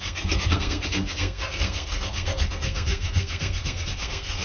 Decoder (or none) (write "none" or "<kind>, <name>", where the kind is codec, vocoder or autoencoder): codec, SNAC